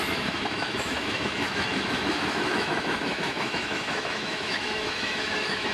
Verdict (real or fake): fake